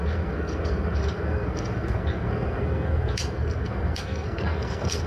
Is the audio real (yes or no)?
no